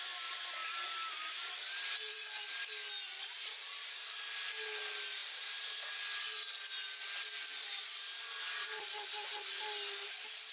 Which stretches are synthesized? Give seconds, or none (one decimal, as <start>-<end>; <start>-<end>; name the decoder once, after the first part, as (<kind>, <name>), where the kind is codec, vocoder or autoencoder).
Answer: 0.6-2.4 (vocoder, BigVGAN v2); 5.2-5.9